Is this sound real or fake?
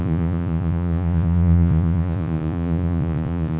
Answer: fake